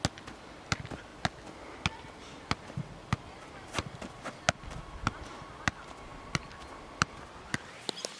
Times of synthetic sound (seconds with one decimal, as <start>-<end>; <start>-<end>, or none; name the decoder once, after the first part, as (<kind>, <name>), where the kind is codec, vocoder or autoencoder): none